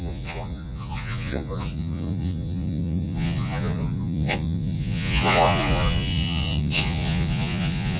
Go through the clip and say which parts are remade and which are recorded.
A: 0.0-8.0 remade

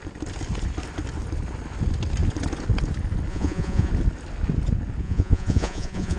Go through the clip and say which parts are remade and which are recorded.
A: 0.0-3.3 recorded; 3.3-3.9 remade; 3.9-5.0 recorded; 5.0-6.2 remade